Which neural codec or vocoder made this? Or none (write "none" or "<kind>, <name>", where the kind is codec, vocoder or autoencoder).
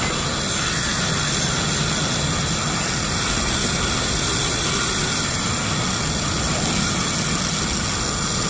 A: none